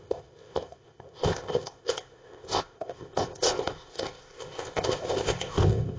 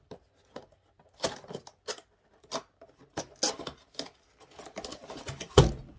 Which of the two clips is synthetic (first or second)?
first